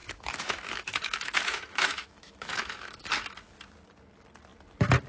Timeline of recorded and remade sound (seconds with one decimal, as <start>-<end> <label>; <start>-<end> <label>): 0.0-3.1 remade; 3.1-5.1 recorded

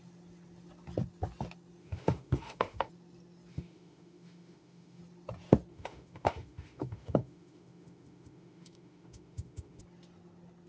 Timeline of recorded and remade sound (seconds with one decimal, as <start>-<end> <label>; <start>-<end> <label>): 0.0-1.8 recorded; 1.8-2.9 remade; 2.9-3.5 recorded; 3.5-5.0 remade; 5.0-5.7 recorded; 5.7-9.8 remade; 9.8-10.7 recorded